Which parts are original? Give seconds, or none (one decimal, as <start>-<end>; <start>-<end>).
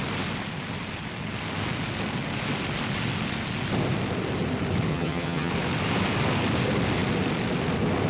0.0-4.9; 5.5-8.1